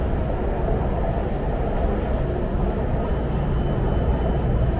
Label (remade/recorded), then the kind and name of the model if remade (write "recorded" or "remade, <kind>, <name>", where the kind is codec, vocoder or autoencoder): recorded